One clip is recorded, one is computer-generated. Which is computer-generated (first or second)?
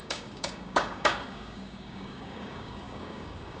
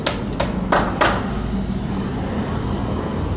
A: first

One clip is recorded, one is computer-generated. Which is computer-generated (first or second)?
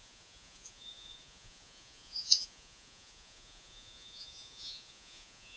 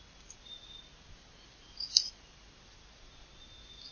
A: first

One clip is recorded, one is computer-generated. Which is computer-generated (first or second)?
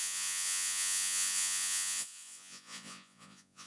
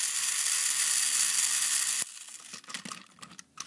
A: first